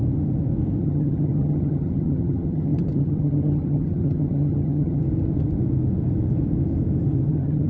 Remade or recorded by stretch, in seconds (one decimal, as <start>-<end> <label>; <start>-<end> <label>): 0.0-0.8 recorded; 0.8-5.0 remade; 5.0-7.3 recorded; 7.3-7.7 remade